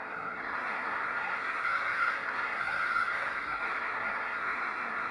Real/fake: fake